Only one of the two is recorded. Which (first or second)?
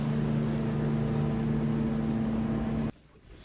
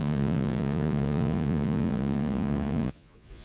first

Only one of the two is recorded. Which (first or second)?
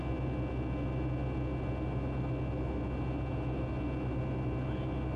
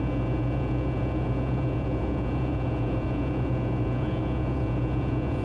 first